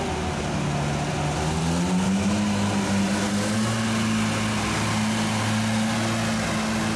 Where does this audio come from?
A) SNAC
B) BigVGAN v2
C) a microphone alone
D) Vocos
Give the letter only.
C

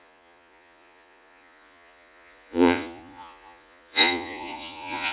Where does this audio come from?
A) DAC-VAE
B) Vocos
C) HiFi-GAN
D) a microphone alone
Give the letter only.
B